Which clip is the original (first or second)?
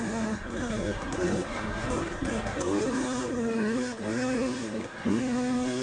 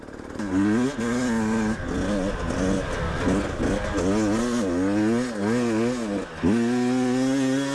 second